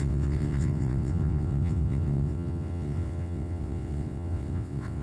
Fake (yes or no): yes